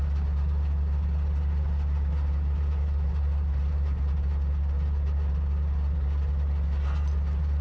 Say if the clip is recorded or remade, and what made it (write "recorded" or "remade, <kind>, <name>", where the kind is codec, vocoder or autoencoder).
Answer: recorded